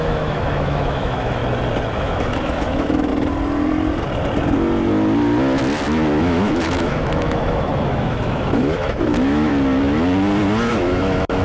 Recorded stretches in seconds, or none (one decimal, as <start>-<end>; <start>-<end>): 1.4-2.0; 3.1-6.2; 9.5-10.7